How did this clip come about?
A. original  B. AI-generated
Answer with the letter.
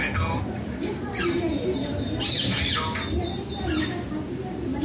A